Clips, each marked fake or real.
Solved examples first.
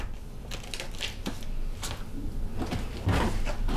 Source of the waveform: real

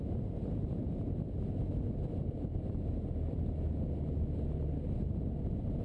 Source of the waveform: real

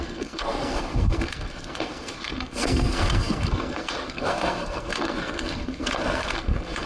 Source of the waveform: fake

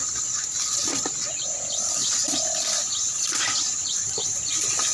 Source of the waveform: real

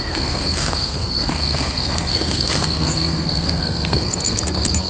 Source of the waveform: fake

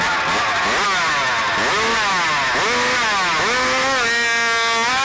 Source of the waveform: real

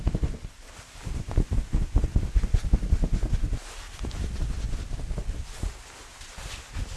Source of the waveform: real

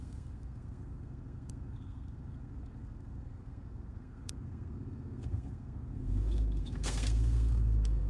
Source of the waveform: fake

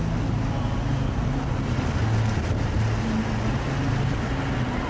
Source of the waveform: real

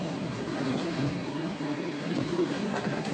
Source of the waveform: fake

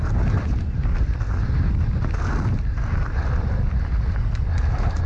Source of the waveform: real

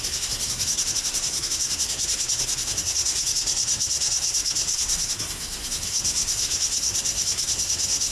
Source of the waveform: fake